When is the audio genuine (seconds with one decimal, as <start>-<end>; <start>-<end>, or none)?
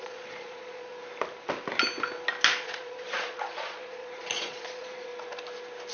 0.9-2.6; 5.1-5.9